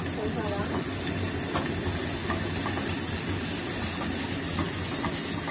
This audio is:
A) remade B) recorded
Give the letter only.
B